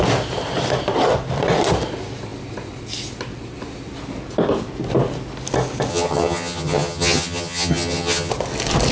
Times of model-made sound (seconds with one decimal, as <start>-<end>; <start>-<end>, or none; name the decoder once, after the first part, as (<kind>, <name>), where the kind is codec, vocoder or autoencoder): 5.9-8.3 (vocoder, HiFi-GAN)